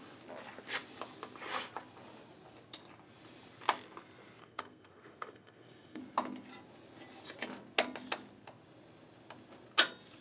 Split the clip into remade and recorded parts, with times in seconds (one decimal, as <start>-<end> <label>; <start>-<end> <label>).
0.0-4.4 recorded; 4.4-6.0 remade; 6.0-10.2 recorded